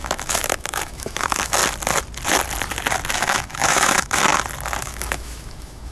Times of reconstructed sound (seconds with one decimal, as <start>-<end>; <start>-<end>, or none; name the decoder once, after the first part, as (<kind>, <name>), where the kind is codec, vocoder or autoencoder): 0.0-1.6 (autoencoder, DAC-VAE); 3.1-4.3; 4.8-5.9